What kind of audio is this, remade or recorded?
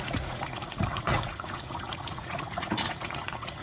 remade